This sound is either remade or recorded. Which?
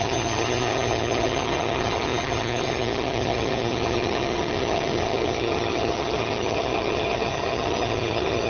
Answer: remade